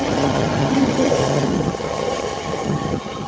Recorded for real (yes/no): no